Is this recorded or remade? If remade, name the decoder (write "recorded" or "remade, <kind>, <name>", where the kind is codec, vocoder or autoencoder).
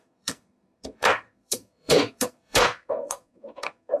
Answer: remade, codec, SNAC